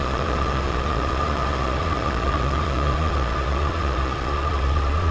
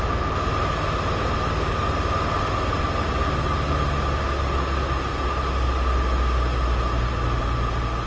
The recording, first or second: second